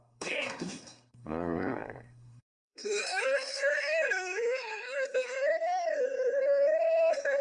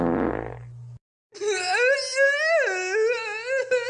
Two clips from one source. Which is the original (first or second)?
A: second